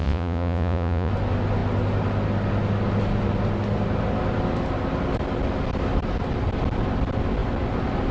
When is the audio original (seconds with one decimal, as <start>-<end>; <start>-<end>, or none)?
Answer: 1.1-8.1

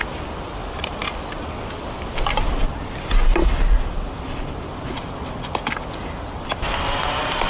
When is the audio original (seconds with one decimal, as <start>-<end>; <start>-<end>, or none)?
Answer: 0.0-7.5

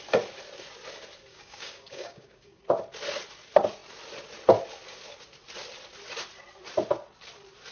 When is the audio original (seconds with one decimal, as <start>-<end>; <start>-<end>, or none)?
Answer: 0.0-1.3; 2.6-7.7

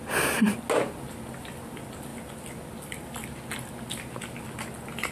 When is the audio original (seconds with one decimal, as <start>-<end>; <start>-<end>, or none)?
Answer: 0.0-5.1

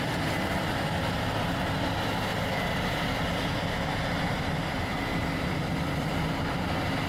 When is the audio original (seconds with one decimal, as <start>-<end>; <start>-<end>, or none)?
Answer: 0.0-2.3; 6.6-7.1